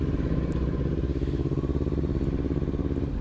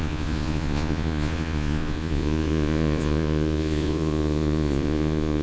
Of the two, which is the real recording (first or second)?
first